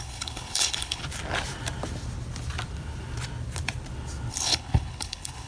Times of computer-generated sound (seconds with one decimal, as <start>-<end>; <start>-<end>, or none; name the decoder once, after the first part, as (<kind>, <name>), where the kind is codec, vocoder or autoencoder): 0.0-1.0 (codec, HILCodec); 4.3-5.5